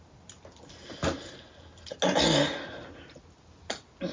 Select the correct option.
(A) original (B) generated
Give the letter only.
A